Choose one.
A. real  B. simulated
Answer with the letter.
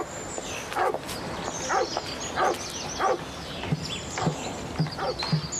A